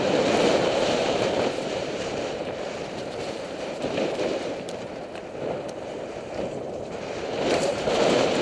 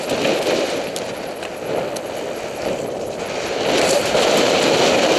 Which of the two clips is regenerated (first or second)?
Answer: first